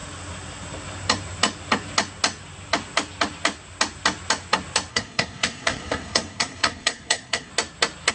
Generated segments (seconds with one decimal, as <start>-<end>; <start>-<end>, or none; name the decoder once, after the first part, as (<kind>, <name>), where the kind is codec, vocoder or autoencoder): 4.9-7.5 (codec, SNAC)